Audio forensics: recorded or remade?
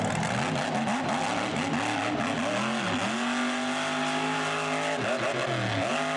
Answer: recorded